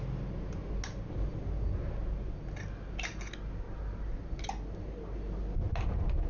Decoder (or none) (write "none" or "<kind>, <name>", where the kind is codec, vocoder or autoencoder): none